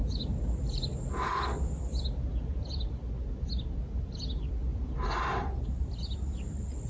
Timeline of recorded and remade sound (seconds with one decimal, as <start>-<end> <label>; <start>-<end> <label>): 0.0-6.9 recorded